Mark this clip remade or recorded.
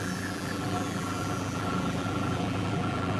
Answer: remade